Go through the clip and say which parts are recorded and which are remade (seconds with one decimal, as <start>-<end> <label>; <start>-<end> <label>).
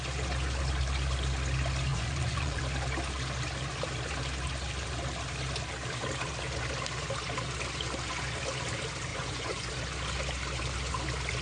0.0-1.9 recorded; 1.9-2.6 remade; 2.6-9.1 recorded; 9.1-9.7 remade; 9.7-11.4 recorded